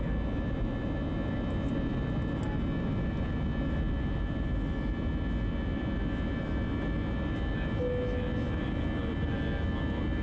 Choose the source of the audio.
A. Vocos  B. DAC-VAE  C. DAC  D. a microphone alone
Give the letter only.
D